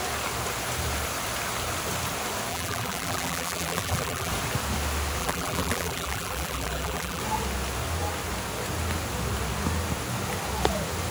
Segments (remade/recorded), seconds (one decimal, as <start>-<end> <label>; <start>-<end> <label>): 0.0-2.5 recorded; 2.5-4.3 remade; 4.3-5.2 recorded; 5.2-7.2 remade; 7.2-11.1 recorded